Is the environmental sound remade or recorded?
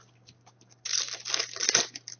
recorded